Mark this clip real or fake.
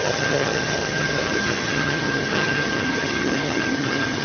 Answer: fake